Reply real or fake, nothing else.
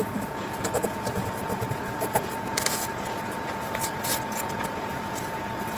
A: fake